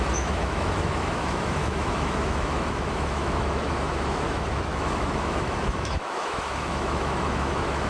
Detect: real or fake fake